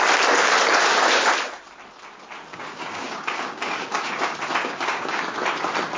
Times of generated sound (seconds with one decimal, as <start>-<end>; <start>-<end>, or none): 2.5-4.1; 4.6-5.2

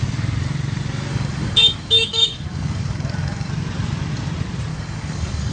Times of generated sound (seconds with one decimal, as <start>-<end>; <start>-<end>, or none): 1.1-3.5; 4.7-5.5

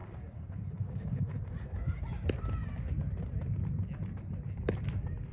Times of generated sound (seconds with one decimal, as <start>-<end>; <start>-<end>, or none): 0.0-2.0

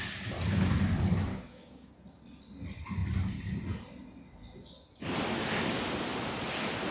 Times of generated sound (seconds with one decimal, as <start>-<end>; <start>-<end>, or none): 1.3-2.0

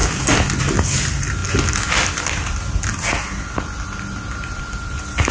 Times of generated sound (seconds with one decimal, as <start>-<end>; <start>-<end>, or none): none

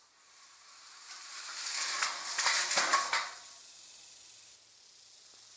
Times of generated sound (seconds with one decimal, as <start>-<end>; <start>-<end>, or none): none

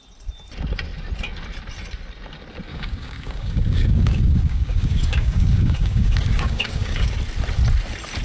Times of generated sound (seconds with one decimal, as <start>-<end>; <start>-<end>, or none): 2.7-7.1